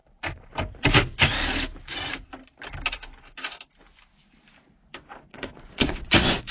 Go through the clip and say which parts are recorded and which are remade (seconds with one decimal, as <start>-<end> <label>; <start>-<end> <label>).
0.0-5.3 recorded; 5.3-6.5 remade